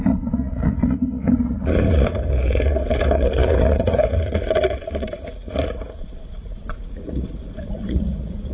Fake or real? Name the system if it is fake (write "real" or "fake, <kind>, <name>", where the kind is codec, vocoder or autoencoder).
fake, vocoder, Vocos